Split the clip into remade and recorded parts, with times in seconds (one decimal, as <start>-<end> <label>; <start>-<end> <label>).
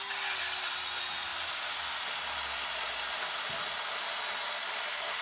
0.0-5.2 recorded